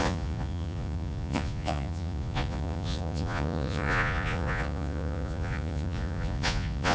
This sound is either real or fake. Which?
fake